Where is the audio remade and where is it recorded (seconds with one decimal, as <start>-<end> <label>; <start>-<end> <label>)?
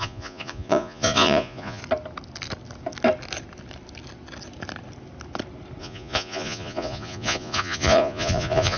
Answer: 0.0-1.8 remade; 1.8-5.8 recorded; 5.8-8.8 remade